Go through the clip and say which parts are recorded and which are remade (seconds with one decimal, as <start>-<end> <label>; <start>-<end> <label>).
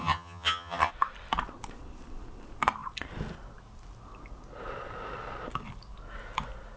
0.0-0.9 remade; 0.9-6.8 recorded